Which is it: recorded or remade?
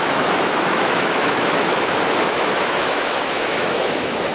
remade